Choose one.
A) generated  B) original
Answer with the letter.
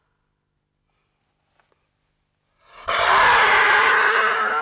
B